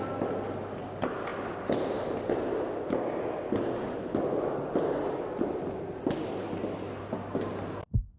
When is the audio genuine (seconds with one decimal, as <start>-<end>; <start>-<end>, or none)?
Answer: 0.0-8.2

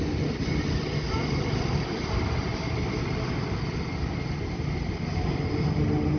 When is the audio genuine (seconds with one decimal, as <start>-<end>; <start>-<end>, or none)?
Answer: 0.0-6.2